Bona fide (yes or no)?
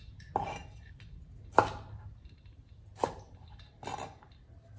yes